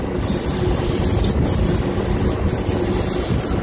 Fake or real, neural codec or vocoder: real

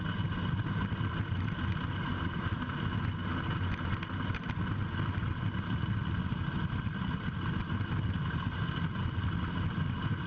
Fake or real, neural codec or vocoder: real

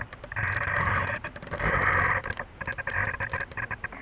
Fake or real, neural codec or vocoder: real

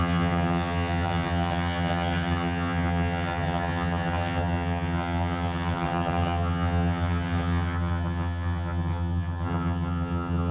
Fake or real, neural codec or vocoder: fake, vocoder, HiFi-GAN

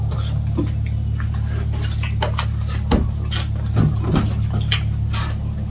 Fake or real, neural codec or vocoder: real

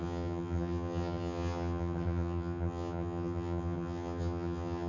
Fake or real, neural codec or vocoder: fake, vocoder, HiFi-GAN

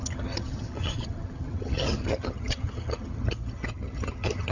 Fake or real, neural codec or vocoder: fake, vocoder, HiFi-GAN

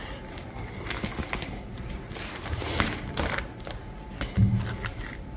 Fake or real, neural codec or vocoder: real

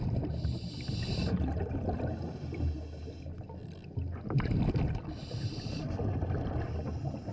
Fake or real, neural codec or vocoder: real